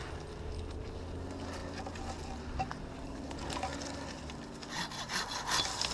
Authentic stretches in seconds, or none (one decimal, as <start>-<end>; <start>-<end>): 0.0-5.9